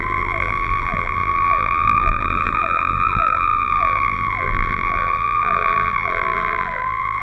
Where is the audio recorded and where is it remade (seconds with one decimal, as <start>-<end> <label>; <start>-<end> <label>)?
0.0-7.2 remade